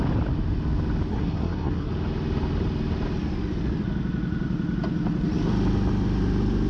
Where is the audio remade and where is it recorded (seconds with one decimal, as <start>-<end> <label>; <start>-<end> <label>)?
0.0-1.1 recorded; 1.1-1.9 remade; 1.9-6.7 recorded